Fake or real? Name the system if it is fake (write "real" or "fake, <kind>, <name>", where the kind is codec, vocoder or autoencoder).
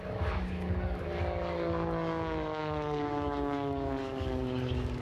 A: fake, codec, DAC